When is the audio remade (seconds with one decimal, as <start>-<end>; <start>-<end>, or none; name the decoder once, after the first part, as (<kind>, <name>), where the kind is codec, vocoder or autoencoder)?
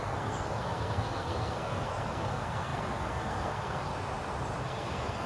0.0-3.9 (codec, SNAC); 4.6-5.3